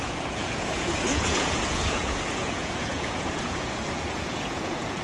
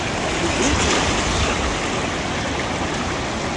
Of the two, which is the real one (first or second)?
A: second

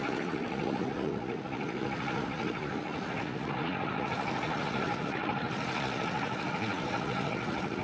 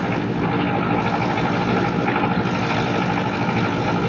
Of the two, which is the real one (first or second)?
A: second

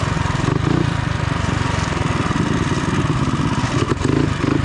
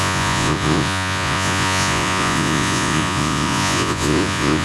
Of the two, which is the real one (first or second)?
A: first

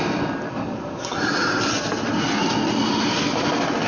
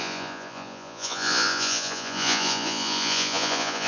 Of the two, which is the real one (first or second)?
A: first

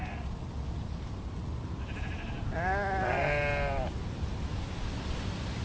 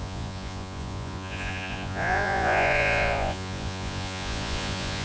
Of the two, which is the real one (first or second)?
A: first